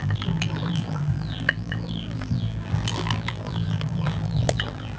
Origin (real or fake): fake